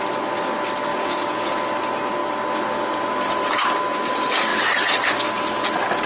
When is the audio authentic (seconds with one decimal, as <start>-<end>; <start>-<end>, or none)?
0.0-0.9; 1.5-6.1